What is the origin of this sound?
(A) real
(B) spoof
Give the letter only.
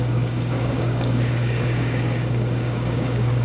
B